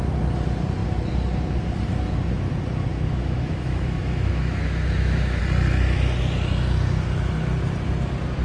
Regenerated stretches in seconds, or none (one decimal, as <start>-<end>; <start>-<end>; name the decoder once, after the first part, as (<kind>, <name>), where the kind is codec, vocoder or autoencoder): 2.9-5.4 (autoencoder, DAC-VAE)